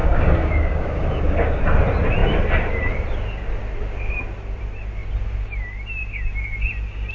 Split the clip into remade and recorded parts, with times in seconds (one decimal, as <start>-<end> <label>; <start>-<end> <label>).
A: 0.0-1.6 remade; 1.6-7.1 recorded